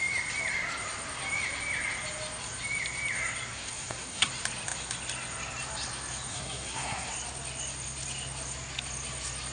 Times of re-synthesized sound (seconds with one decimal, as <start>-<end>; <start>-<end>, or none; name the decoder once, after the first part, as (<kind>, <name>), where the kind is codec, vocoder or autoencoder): 3.5-4.3 (codec, SNAC); 6.3-7.1